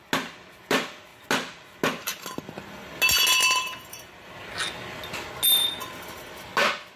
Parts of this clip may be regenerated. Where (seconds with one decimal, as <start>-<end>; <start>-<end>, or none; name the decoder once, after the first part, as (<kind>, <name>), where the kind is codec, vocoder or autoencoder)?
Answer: 3.4-4.6 (vocoder, BigVGAN v2)